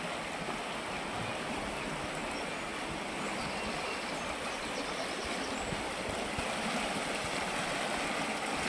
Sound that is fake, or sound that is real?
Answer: real